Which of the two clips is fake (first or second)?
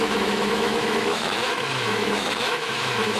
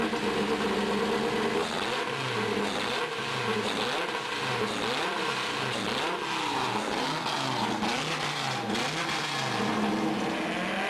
first